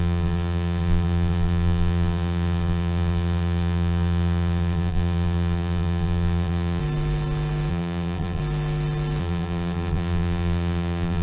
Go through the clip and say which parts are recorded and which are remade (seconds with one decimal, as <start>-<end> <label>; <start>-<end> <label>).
0.0-6.8 remade; 6.8-7.7 recorded; 7.7-8.4 remade; 8.4-9.2 recorded; 9.2-11.2 remade